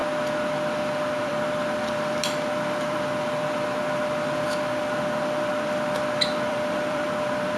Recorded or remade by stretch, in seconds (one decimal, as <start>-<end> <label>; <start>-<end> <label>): 0.0-1.2 recorded; 1.2-7.6 remade